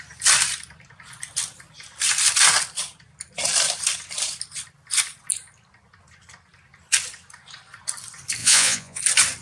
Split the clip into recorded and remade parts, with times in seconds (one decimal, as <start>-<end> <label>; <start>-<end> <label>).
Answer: 0.0-8.4 recorded; 8.4-9.0 remade; 9.0-9.4 recorded

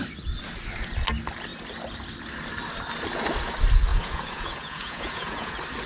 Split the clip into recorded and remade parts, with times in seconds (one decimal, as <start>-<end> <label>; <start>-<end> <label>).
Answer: 0.0-3.9 recorded; 3.9-5.5 remade; 5.5-5.9 recorded

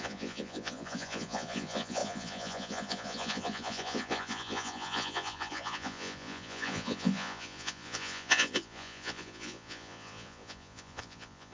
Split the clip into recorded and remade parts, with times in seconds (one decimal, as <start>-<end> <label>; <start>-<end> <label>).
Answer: 0.0-11.5 remade

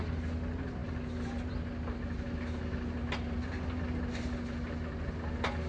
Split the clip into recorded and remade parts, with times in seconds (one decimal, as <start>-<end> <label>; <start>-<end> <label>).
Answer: 0.0-5.7 recorded

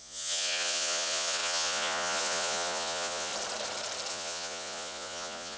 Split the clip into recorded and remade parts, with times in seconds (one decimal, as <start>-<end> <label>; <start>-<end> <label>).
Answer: 0.0-3.3 remade; 3.3-4.1 recorded; 4.1-5.6 remade